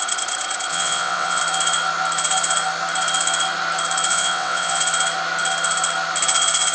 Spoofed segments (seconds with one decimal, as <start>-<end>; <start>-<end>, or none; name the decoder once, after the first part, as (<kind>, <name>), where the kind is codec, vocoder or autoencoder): 0.7-1.4 (vocoder, WaveNeXt); 4.1-4.8